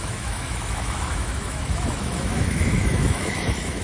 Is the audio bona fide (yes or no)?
no